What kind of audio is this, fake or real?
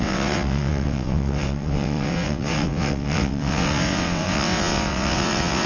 fake